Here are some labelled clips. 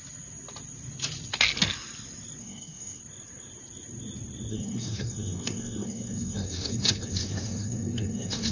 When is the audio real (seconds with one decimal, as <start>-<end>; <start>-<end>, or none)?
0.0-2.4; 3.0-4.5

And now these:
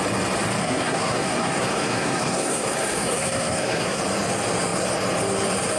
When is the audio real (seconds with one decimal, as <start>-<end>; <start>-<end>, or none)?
0.0-0.6; 4.0-5.8

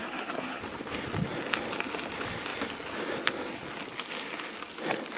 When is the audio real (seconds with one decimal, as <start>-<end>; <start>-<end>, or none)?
0.6-5.2

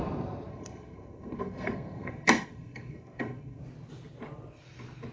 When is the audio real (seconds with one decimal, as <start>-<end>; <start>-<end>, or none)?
0.0-0.5; 3.6-5.1